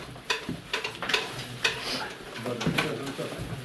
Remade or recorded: recorded